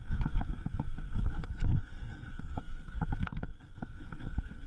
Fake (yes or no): yes